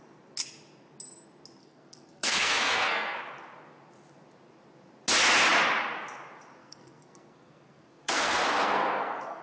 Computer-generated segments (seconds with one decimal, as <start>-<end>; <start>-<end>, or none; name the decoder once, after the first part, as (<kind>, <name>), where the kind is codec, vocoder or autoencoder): 1.6-3.2 (codec, SNAC); 6.6-9.4

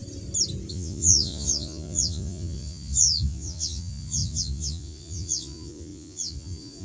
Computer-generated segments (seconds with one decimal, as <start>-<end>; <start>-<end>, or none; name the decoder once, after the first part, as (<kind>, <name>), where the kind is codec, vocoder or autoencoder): 0.7-6.8 (vocoder, Vocos)

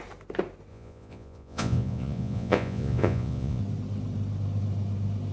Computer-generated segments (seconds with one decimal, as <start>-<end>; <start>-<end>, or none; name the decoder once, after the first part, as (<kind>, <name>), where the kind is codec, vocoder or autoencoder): 0.7-3.6 (vocoder, Vocos)